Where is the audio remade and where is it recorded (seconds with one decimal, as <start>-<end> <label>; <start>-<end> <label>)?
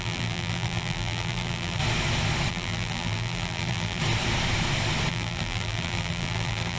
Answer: 0.0-1.8 remade; 1.8-2.5 recorded; 2.5-4.0 remade; 4.0-5.1 recorded; 5.1-6.8 remade